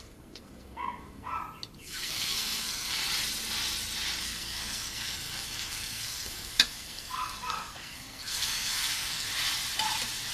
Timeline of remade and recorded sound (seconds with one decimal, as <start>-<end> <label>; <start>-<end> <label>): 0.0-1.3 remade; 1.3-1.8 recorded; 1.8-3.0 remade; 3.0-4.2 recorded; 4.2-9.3 remade; 9.3-10.3 recorded